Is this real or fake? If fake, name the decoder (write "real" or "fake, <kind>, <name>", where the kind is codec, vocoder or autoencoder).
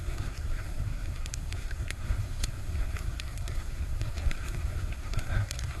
fake, codec, SNAC